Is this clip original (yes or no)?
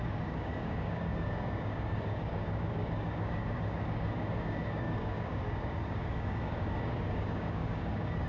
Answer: no